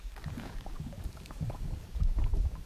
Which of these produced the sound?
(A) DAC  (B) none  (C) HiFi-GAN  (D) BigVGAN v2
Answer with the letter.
A